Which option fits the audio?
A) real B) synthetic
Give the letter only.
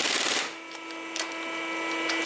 A